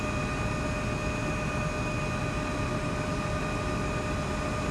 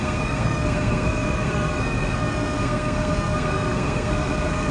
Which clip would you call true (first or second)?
first